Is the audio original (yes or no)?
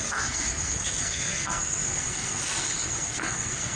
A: no